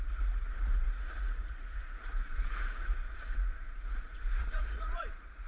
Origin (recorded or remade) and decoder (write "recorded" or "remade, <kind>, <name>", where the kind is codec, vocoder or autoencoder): remade, vocoder, Vocos